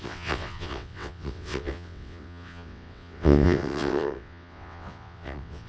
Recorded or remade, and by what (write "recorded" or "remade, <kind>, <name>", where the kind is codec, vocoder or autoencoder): remade, vocoder, WaveNeXt